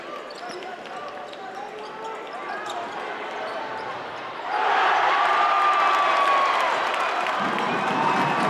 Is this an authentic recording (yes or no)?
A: yes